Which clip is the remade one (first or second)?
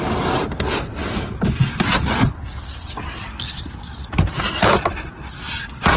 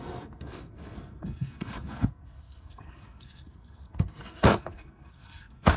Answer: second